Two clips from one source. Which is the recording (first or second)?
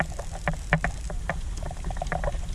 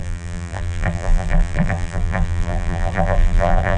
first